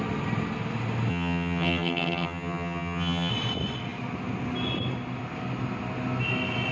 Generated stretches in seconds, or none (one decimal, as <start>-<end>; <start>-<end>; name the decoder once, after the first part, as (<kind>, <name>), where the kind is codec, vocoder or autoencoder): 1.1-3.3 (vocoder, HiFi-GAN)